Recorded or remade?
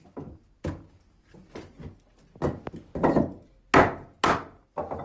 recorded